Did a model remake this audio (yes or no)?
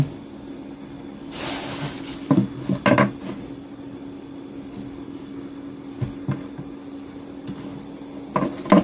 no